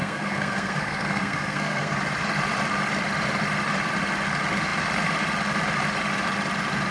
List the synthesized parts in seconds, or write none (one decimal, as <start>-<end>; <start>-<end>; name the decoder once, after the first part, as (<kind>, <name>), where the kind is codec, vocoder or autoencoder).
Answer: 0.0-2.0 (codec, SNAC)